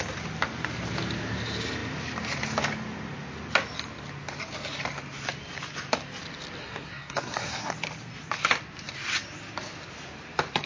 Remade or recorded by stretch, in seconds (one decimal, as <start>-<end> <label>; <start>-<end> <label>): 0.0-6.6 recorded; 6.6-7.7 remade; 7.7-10.7 recorded

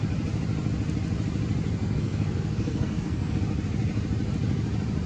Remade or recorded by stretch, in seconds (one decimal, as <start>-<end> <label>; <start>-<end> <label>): 0.0-1.8 recorded; 1.8-3.4 remade; 3.4-5.1 recorded

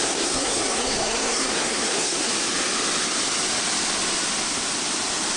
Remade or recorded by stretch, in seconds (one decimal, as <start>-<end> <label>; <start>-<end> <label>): 0.0-2.3 remade; 2.3-5.4 recorded

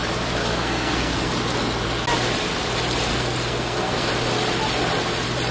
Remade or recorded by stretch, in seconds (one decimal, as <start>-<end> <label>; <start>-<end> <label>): 0.0-0.4 recorded; 0.4-1.3 remade; 1.3-3.1 recorded; 3.1-4.1 remade; 4.1-5.5 recorded

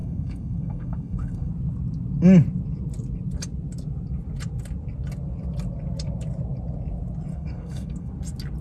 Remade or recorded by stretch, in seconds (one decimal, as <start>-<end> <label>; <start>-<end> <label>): 0.0-1.5 remade; 1.5-7.3 recorded; 7.3-8.1 remade; 8.1-8.6 recorded